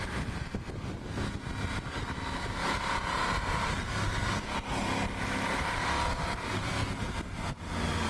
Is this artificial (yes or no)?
no